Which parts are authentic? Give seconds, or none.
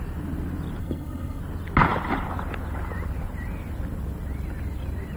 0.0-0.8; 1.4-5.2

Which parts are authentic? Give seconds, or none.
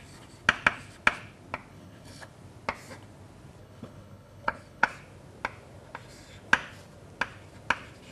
0.0-1.7; 2.3-3.6; 4.9-8.1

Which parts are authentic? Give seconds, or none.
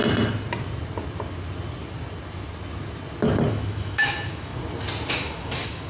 0.0-3.5; 4.5-5.1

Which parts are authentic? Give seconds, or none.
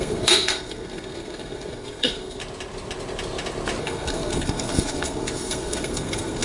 2.4-3.8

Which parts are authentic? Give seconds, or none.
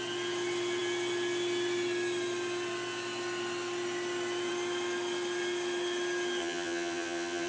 0.0-6.4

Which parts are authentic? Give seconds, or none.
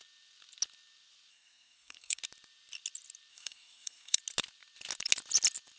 0.0-1.3; 2.2-3.3; 4.2-5.8